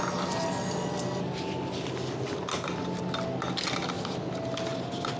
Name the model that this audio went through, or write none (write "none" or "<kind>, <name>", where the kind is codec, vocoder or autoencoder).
none